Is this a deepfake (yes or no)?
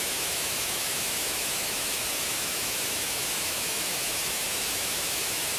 yes